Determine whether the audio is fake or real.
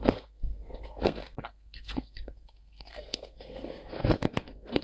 fake